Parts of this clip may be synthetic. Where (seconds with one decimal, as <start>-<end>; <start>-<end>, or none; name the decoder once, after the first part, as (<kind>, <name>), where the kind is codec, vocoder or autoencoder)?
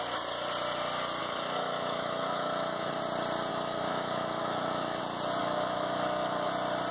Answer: 1.2-3.0 (autoencoder, DAC-VAE); 3.5-5.0; 5.4-6.5